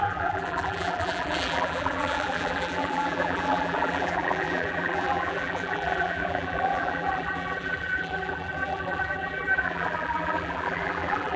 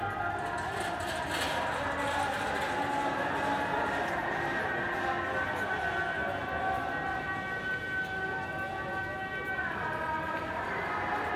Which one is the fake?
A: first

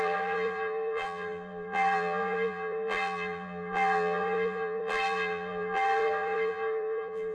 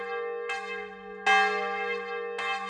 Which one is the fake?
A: first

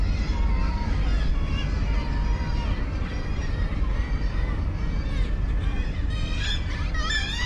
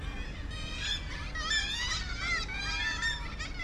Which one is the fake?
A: first